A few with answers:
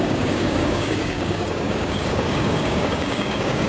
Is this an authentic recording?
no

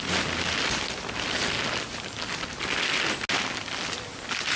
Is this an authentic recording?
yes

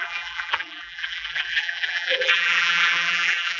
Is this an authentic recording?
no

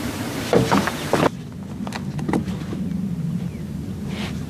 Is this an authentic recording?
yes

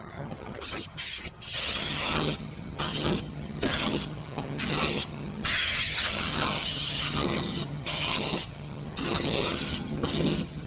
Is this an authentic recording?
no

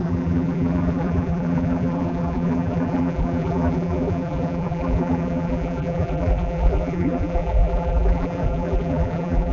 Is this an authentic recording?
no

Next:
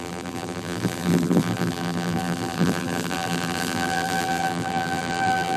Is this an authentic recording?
no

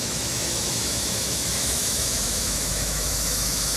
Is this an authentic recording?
no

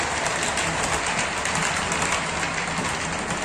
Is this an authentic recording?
yes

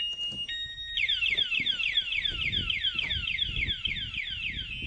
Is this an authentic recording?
yes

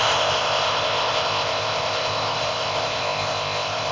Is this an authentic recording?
no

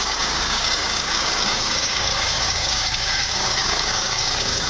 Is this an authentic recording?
no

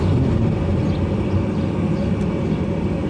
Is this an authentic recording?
yes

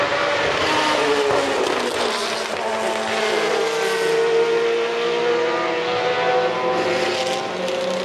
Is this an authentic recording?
yes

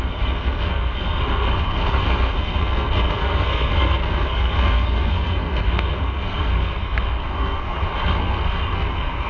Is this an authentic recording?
no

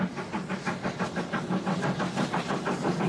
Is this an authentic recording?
yes